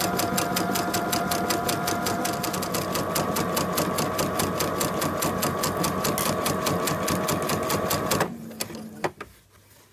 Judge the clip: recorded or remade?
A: recorded